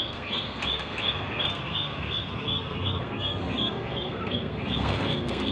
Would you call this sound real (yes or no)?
no